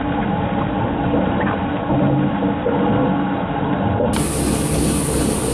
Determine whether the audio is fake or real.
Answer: real